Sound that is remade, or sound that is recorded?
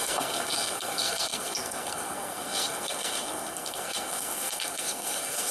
remade